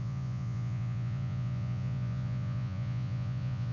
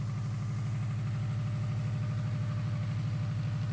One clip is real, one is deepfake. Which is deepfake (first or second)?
first